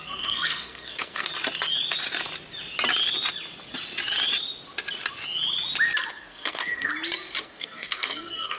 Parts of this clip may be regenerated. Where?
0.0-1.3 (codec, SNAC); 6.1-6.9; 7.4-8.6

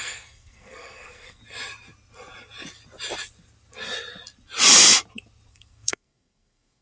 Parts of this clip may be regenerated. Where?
0.0-1.4 (codec, SNAC); 5.5-6.8